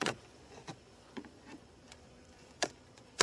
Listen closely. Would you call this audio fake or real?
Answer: fake